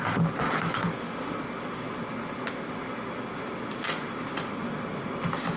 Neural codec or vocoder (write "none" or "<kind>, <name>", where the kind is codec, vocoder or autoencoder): none